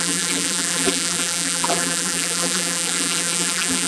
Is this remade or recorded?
remade